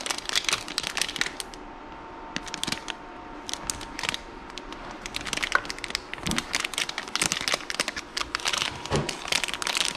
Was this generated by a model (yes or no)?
no